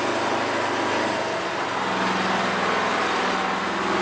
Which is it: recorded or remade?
recorded